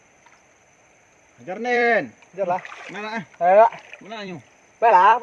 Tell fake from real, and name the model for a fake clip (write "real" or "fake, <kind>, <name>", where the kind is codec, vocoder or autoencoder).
fake, vocoder, BigVGAN v2